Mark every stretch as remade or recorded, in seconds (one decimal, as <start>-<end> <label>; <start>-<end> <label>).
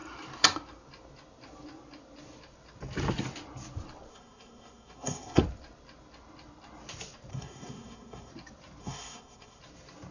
0.0-4.1 recorded; 4.1-5.4 remade; 5.4-7.3 recorded; 7.3-8.3 remade; 8.3-8.8 recorded; 8.8-9.6 remade; 9.6-10.1 recorded